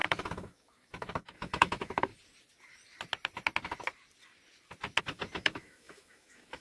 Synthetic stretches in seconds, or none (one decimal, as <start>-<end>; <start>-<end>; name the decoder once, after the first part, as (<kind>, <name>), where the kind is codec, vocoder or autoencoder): 0.0-2.1 (autoencoder, DAC-VAE); 5.0-6.6

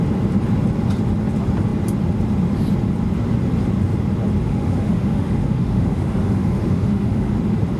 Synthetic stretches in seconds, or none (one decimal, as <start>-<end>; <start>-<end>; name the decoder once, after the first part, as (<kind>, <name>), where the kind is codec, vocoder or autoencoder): 4.4-7.3 (autoencoder, DAC-VAE)

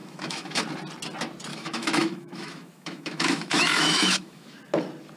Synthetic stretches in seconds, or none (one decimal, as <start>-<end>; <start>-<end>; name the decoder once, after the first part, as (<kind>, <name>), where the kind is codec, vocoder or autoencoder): 0.0-0.6 (autoencoder, DAC-VAE); 1.5-4.6

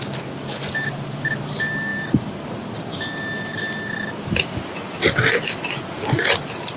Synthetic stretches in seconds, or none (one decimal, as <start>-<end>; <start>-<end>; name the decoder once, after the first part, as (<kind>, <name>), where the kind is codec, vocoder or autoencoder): none